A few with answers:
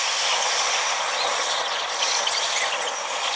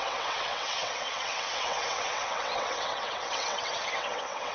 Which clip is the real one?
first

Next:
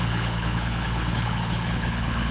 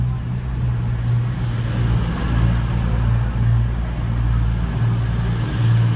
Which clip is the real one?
second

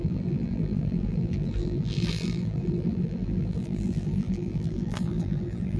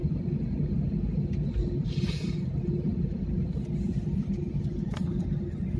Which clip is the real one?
second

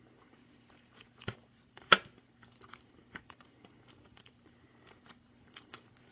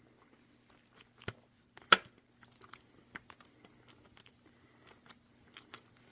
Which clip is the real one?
second